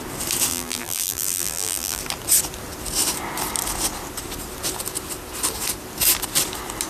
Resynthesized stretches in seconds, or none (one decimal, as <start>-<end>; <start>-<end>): 0.5-2.0